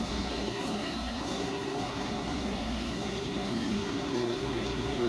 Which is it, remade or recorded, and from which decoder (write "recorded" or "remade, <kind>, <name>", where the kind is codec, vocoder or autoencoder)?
remade, codec, SNAC